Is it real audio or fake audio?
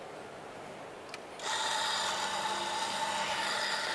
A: real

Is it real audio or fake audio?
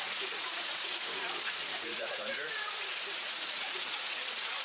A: fake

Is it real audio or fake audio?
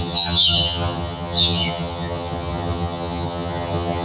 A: fake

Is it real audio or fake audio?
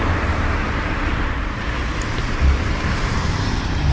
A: fake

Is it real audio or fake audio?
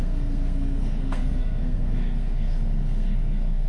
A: fake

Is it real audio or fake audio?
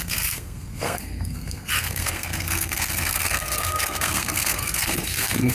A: fake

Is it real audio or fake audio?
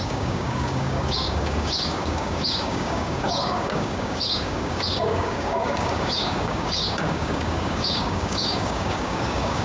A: fake